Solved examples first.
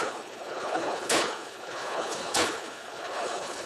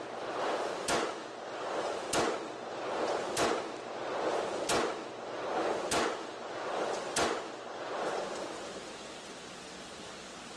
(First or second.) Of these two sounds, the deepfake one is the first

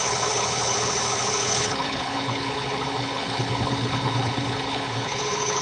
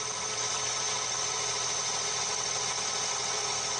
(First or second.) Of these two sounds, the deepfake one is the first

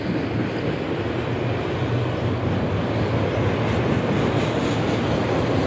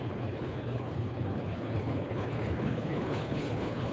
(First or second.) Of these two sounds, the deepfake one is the second